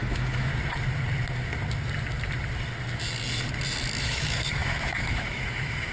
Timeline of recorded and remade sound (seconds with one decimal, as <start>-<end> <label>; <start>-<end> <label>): 0.0-0.5 remade; 0.5-4.0 recorded; 4.0-5.9 remade